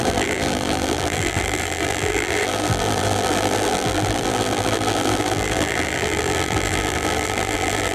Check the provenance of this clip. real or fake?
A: fake